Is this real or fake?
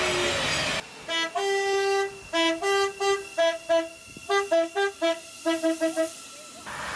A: real